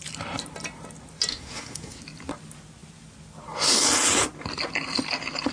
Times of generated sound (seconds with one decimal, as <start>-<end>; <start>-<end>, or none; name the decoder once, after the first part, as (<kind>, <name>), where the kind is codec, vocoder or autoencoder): 1.3-2.0 (codec, SNAC)